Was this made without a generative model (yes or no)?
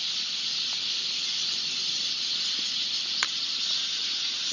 yes